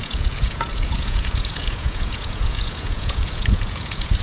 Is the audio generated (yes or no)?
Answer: yes